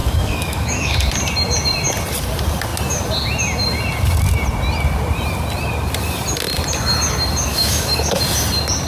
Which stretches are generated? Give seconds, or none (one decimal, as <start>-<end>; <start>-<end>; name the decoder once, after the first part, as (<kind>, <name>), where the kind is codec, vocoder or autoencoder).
0.0-1.1 (codec, DAC); 7.5-8.2